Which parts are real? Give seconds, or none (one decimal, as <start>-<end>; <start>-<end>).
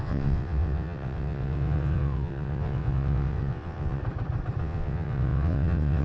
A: 4.0-4.6